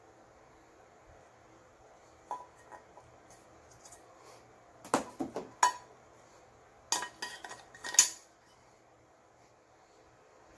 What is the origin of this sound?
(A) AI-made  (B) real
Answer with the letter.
B